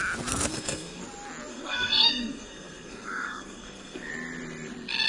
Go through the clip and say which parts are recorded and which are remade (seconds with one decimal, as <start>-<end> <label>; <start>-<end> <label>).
0.0-0.5 recorded; 0.5-1.0 remade; 1.0-1.5 recorded; 1.5-4.1 remade; 4.1-5.1 recorded